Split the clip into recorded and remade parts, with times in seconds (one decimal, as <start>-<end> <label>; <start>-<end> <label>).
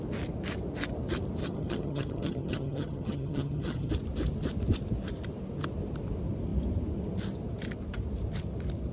0.0-1.4 recorded; 1.4-3.9 remade; 3.9-8.9 recorded